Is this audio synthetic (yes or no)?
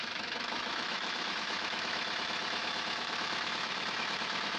yes